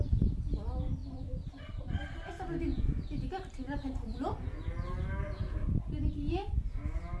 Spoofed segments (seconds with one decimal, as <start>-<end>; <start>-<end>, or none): none